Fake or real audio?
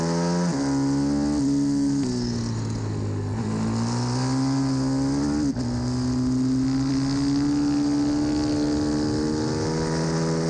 real